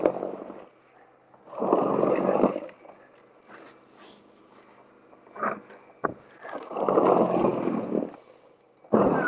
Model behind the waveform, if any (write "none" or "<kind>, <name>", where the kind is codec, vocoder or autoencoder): none